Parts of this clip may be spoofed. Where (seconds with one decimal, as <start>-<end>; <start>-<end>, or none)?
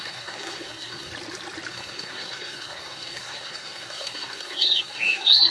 0.0-1.1; 1.7-5.5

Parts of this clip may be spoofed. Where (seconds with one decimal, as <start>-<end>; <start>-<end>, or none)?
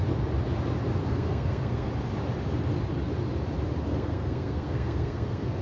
1.0-1.9; 3.9-5.6